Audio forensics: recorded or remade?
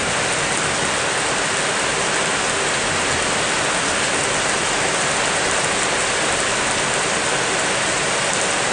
recorded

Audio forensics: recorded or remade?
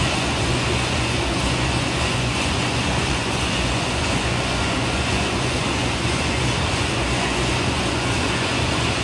remade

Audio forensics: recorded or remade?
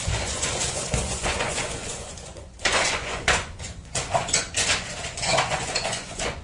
remade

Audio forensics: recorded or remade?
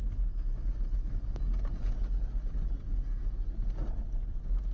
recorded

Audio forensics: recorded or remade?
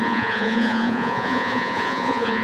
remade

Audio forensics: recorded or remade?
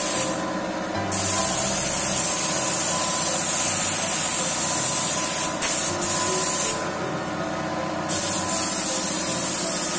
recorded